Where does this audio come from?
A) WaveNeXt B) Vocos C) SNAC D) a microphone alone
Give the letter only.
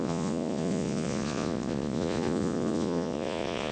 B